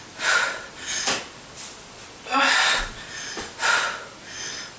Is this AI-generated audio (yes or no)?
no